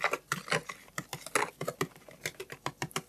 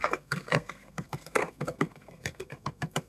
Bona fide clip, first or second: first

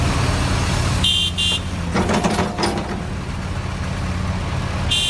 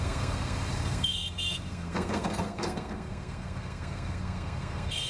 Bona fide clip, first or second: first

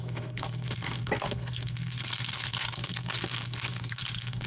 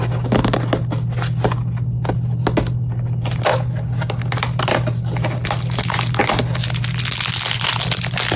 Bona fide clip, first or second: second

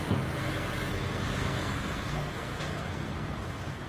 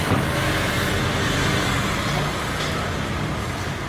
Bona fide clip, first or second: second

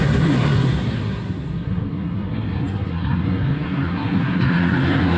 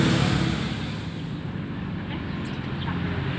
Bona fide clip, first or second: second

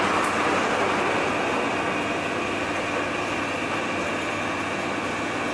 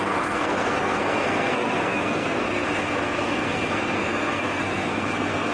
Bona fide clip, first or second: first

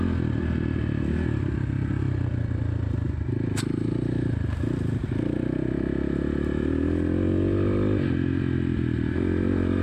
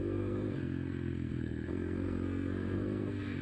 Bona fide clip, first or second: first